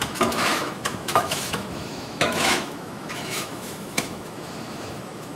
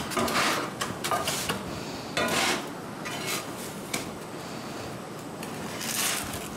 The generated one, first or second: first